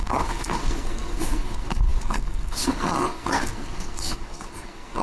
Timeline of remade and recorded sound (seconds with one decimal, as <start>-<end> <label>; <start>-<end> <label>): 0.0-5.0 remade